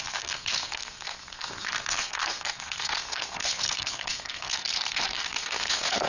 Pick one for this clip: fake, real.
fake